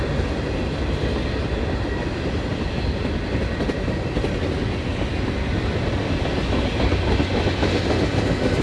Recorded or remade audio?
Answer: recorded